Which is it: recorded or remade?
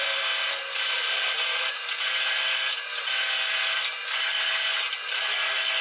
recorded